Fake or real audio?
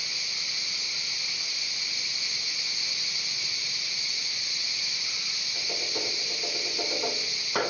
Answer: real